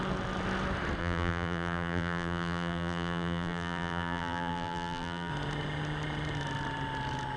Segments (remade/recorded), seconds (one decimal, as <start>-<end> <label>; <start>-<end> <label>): 0.0-1.0 recorded; 1.0-5.3 remade; 5.3-7.4 recorded